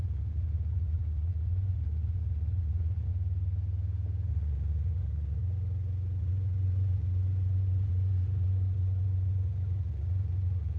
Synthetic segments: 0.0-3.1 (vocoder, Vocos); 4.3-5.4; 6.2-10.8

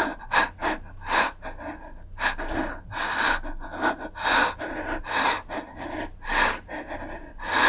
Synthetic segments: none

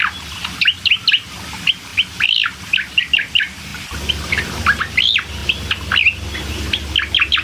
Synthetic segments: 1.9-3.0 (vocoder, BigVGAN v2)